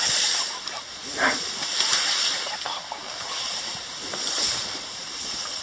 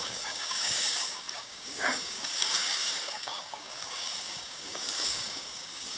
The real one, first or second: first